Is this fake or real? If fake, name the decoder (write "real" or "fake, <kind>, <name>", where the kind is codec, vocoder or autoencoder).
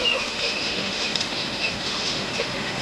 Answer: fake, autoencoder, DAC-VAE